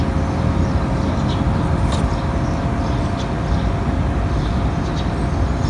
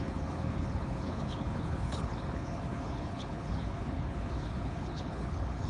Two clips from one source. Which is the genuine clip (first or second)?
first